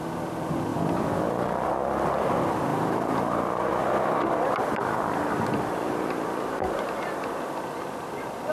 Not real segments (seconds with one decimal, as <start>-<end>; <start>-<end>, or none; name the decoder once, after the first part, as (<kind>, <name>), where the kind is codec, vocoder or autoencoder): 2.7-3.7 (vocoder, BigVGAN v2)